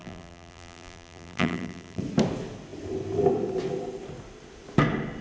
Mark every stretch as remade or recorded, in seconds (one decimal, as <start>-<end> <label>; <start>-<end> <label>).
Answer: 0.0-2.0 remade; 2.0-5.2 recorded